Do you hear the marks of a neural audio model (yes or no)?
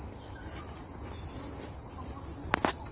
no